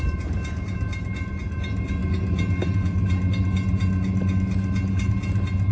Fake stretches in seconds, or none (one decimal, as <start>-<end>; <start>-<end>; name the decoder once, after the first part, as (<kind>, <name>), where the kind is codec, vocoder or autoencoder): none